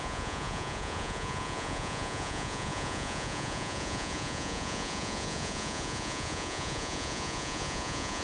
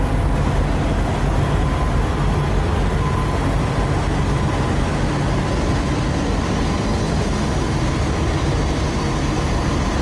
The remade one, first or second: first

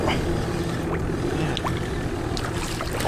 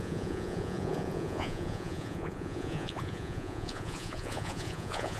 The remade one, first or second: second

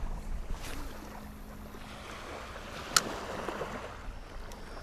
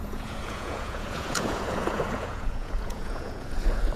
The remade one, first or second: second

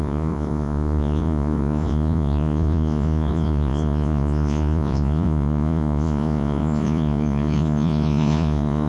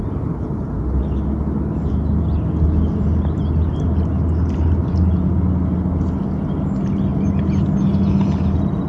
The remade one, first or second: first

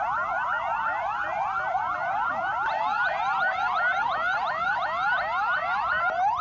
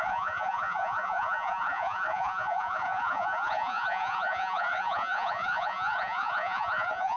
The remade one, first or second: second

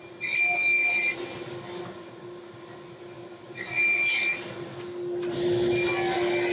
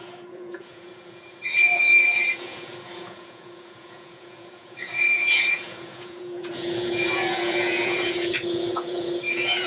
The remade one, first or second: second